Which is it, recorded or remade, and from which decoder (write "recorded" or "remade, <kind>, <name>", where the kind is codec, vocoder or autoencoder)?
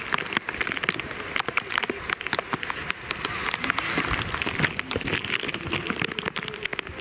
recorded